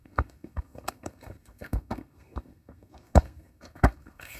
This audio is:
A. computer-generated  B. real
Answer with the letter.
A